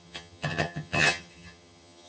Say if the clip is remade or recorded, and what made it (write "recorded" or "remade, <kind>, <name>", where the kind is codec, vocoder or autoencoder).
remade, vocoder, HiFi-GAN